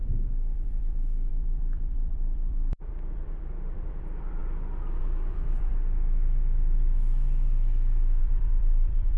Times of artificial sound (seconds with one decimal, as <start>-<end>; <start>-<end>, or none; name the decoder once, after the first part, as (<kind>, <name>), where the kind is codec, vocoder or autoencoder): 0.0-4.4 (vocoder, BigVGAN v2); 5.0-5.7; 8.2-9.2